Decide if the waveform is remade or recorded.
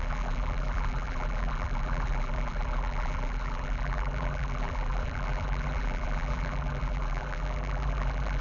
remade